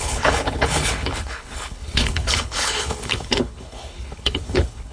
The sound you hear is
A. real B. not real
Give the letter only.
B